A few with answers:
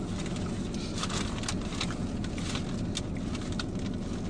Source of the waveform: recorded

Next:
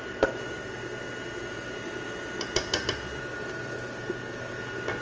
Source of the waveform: recorded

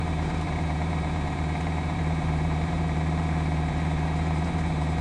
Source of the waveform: remade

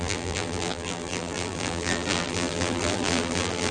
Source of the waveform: remade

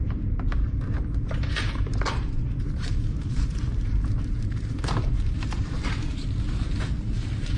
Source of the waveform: remade